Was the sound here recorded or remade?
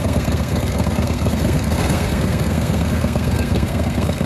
remade